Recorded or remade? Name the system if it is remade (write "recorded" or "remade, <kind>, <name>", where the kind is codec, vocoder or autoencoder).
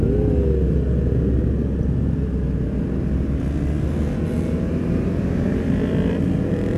recorded